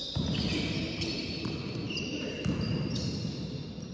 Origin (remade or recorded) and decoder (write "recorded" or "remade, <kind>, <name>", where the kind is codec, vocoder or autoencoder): recorded